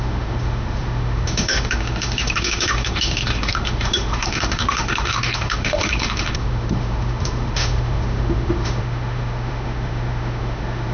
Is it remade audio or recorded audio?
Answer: remade